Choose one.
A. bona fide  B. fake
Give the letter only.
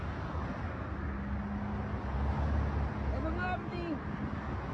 A